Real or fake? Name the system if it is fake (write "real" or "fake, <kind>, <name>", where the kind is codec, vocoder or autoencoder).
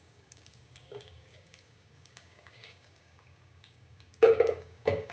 fake, codec, DAC